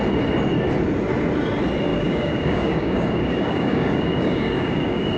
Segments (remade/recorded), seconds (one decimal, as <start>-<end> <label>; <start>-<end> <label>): 0.0-1.9 recorded; 1.9-5.2 remade